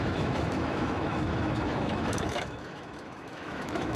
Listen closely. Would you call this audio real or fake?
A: fake